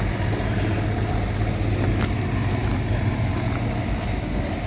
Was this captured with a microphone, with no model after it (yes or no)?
yes